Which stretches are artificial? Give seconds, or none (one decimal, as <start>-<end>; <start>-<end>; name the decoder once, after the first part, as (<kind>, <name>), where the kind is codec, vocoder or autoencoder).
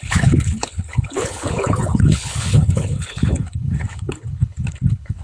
0.0-5.2 (codec, HILCodec)